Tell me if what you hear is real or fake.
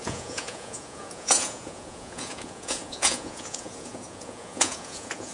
fake